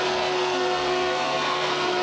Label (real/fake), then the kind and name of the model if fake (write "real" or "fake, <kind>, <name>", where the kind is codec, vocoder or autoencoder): fake, codec, SNAC